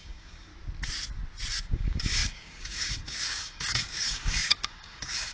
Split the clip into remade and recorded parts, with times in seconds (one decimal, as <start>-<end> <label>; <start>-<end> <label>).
0.0-0.5 remade; 0.5-1.6 recorded; 1.6-5.3 remade